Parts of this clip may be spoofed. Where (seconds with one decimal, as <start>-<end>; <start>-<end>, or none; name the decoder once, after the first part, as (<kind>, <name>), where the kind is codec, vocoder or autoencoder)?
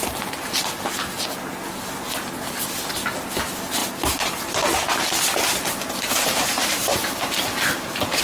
3.8-8.2 (vocoder, BigVGAN v2)